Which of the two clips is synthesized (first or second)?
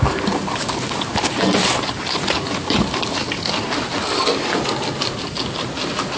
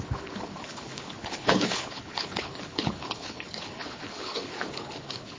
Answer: second